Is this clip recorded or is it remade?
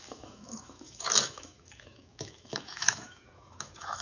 remade